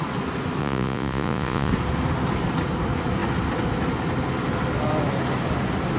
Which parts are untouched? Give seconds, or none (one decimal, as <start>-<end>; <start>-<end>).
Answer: 0.0-0.6; 1.7-6.0